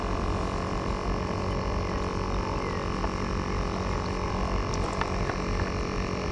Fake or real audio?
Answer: real